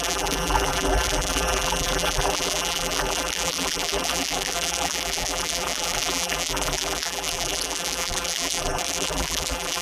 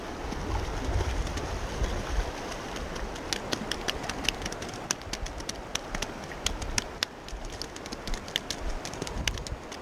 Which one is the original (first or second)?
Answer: second